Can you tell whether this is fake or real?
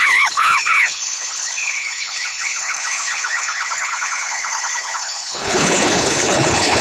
fake